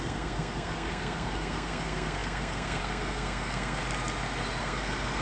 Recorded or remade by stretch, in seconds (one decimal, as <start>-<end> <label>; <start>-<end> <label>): 0.0-3.8 remade; 3.8-4.6 recorded; 4.6-5.2 remade